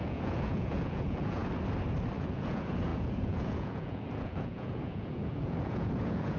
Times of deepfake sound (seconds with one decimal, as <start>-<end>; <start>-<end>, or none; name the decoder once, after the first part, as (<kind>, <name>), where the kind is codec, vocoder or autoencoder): 0.0-1.4 (vocoder, Vocos); 2.2-6.4